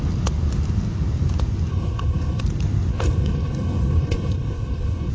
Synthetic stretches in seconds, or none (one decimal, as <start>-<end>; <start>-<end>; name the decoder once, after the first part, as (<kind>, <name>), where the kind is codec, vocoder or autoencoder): 1.7-2.4 (codec, HILCodec); 2.9-5.1